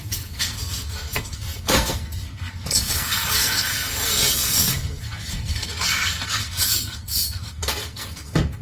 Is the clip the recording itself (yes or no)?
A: no